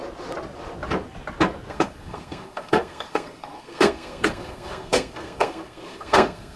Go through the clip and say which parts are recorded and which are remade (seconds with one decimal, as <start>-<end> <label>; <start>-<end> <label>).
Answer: 0.0-1.7 recorded; 1.7-6.6 remade